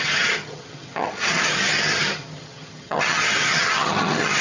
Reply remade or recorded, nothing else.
remade